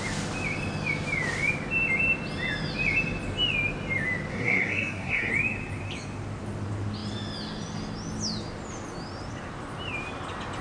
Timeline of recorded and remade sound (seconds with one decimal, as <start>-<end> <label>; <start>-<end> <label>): 0.0-4.3 recorded; 4.3-5.3 remade; 5.3-10.6 recorded

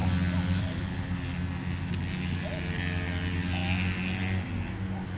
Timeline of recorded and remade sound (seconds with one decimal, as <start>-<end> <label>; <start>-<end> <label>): 0.0-5.2 recorded